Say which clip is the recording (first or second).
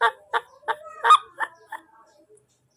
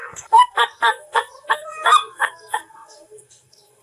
first